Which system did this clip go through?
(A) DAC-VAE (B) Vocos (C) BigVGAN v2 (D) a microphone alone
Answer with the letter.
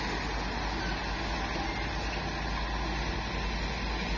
D